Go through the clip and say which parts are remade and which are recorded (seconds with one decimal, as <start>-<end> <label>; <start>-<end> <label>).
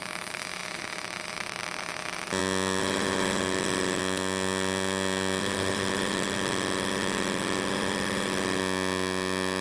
0.0-2.8 recorded; 2.8-4.0 remade; 4.0-5.4 recorded; 5.4-8.6 remade; 8.6-9.6 recorded